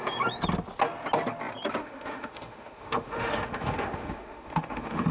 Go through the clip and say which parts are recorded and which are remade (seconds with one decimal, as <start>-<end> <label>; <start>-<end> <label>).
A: 0.0-1.8 recorded; 1.8-5.1 remade